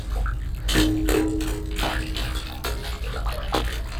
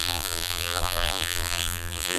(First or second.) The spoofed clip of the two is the second